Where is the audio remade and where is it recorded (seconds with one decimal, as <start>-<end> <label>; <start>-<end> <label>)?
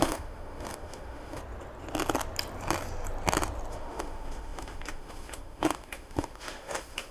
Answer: 0.0-1.4 remade; 1.4-3.7 recorded; 3.7-7.1 remade